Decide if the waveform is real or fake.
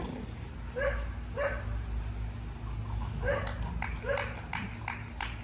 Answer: real